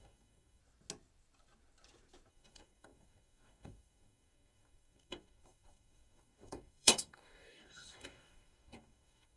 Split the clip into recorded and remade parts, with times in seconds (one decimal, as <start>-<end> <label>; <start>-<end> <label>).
0.0-0.6 remade; 0.6-2.3 recorded; 2.3-9.4 remade